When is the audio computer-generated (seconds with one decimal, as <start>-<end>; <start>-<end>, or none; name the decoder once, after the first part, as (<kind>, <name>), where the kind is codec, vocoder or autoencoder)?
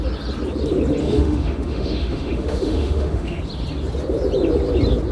1.0-3.4 (autoencoder, DAC-VAE)